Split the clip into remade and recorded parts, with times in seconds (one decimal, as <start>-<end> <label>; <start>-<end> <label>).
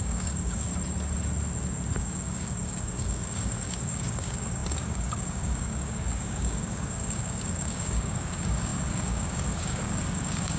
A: 0.0-0.7 remade; 0.7-2.0 recorded; 2.0-10.6 remade